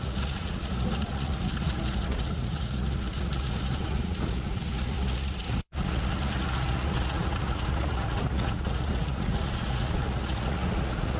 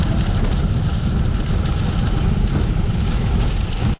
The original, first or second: second